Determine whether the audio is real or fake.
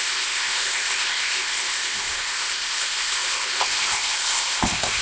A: fake